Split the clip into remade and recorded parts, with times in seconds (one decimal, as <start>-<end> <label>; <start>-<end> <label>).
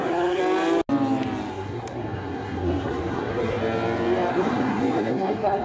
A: 0.0-0.4 remade; 0.4-1.5 recorded; 1.5-3.6 remade; 3.6-4.3 recorded; 4.3-5.6 remade